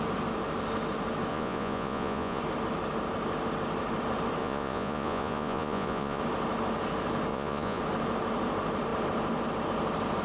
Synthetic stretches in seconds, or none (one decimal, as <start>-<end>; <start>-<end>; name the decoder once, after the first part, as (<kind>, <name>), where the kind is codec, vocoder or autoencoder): 1.3-2.4 (vocoder, Vocos); 4.4-6.2; 7.3-7.8